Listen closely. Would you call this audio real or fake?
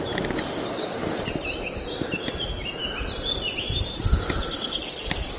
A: real